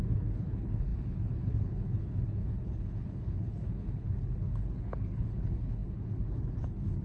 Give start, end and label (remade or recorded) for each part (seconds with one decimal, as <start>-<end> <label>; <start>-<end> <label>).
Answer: 0.0-7.0 remade